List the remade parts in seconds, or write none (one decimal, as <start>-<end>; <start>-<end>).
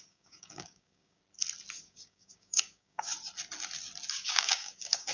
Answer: 0.0-1.2; 1.8-3.1; 4.1-5.1